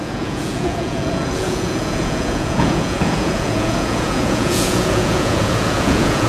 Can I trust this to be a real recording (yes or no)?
no